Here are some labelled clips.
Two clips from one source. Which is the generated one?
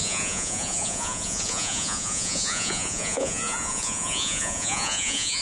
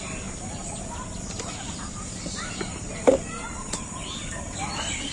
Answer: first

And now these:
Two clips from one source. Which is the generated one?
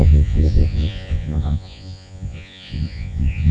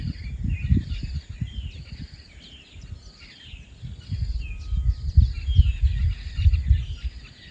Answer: first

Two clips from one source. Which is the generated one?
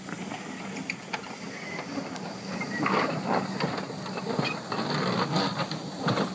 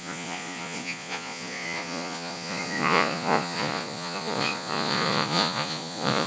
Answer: second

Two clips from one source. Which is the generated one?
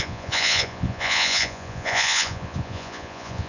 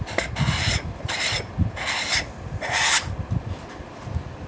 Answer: first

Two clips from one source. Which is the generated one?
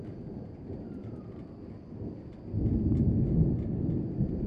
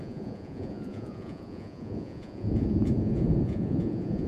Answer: second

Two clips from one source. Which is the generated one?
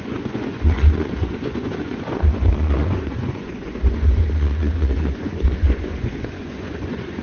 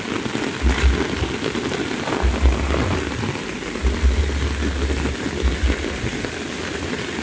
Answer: first